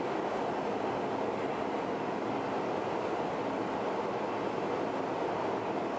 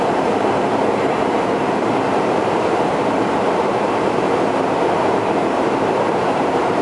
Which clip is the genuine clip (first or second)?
first